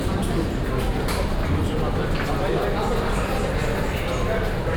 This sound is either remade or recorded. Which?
recorded